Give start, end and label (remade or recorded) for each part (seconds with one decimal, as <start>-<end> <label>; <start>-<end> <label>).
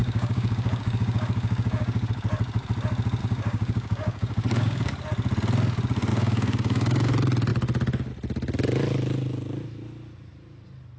0.0-2.1 remade; 2.1-3.2 recorded; 3.2-4.9 remade; 4.9-6.1 recorded; 6.1-7.1 remade; 7.1-11.0 recorded